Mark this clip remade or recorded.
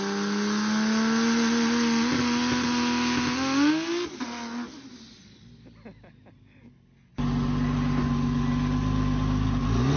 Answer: recorded